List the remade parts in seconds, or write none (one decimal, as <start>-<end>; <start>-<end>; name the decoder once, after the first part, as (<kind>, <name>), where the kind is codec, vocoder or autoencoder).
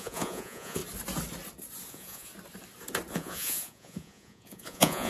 0.0-0.8 (vocoder, Vocos); 1.9-2.3; 3.1-5.1